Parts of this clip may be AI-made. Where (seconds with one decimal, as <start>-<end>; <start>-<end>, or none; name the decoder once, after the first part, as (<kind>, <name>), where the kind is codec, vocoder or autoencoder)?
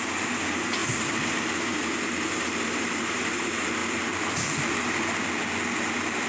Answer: 0.0-3.8 (vocoder, BigVGAN v2)